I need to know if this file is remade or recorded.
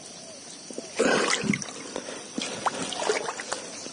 recorded